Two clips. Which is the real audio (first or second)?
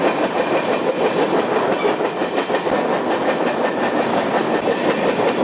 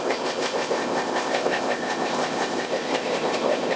first